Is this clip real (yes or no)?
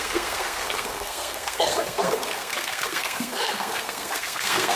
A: no